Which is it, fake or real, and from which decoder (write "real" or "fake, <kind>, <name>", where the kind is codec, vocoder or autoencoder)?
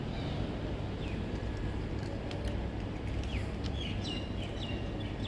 real